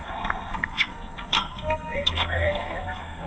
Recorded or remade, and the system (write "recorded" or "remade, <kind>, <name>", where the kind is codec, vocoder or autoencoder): remade, codec, SNAC